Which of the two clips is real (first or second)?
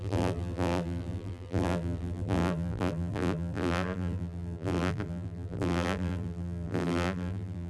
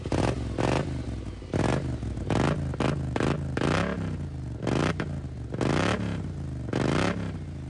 second